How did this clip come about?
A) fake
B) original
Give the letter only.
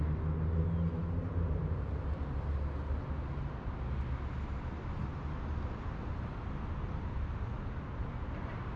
B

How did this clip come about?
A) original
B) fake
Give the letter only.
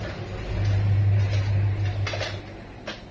A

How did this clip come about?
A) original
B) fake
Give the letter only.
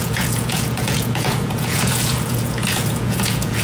B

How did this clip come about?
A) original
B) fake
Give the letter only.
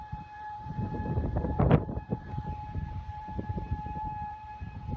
B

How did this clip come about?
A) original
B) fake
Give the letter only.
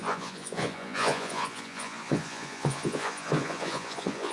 B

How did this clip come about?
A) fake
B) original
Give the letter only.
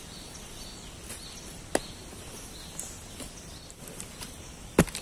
B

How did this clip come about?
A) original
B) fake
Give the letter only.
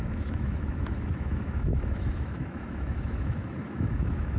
B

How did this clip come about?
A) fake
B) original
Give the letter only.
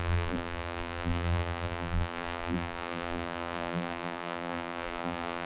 A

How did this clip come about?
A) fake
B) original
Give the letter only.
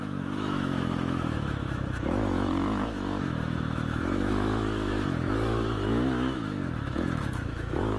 A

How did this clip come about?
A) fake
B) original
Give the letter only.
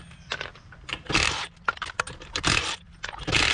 A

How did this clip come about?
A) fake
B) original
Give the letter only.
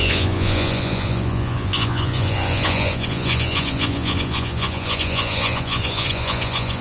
A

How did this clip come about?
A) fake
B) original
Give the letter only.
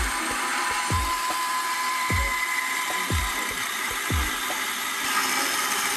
A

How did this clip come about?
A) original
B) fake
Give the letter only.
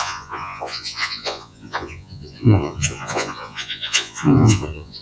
B